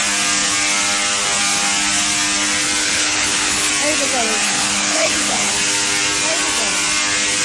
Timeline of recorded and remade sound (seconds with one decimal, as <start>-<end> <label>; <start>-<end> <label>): 0.0-2.8 recorded; 2.8-3.7 remade; 3.7-4.4 recorded; 4.4-5.5 remade; 5.5-7.4 recorded